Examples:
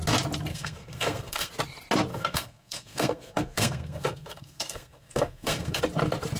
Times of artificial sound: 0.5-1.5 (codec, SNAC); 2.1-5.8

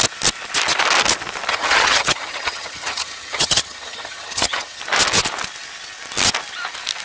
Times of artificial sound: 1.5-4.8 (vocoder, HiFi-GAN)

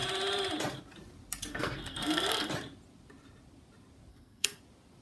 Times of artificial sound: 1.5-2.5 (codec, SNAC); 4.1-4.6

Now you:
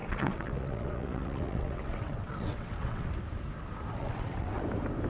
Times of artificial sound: 0.0-3.1 (vocoder, WaveNeXt); 4.0-4.6

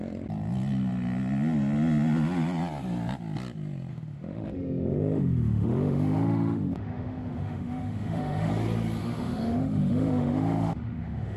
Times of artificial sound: 3.9-8.5 (autoencoder, DAC-VAE); 9.0-11.4

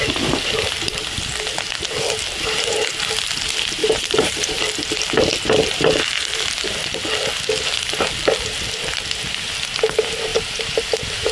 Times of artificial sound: 3.8-4.6 (vocoder, BigVGAN v2); 10.3-11.3

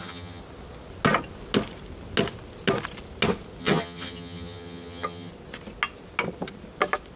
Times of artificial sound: 0.0-0.4 (vocoder, HiFi-GAN); 3.6-5.3

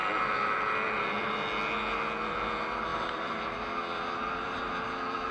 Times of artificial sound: 0.0-1.1 (vocoder, BigVGAN v2); 2.9-4.7